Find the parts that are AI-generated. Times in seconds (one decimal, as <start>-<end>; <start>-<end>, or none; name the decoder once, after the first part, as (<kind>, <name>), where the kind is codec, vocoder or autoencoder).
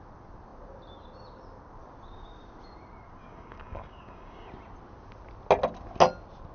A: 3.2-4.5 (codec, DAC)